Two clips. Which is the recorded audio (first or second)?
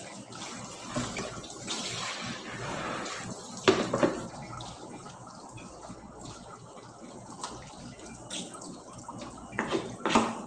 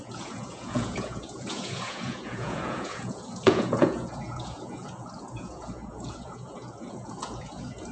first